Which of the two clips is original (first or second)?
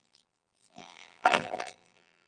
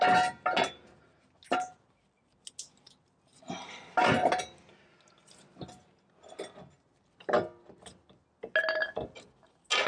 second